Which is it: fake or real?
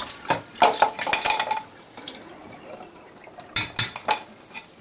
real